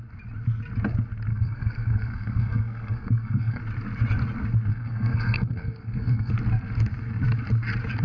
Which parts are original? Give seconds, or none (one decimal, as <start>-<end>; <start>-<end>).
0.0-1.3; 3.6-4.7; 6.3-8.0